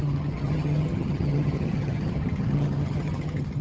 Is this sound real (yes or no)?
no